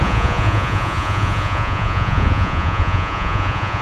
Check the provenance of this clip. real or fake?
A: fake